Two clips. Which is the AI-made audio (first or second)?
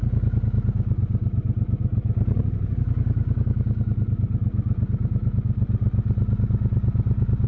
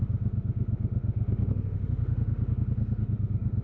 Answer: second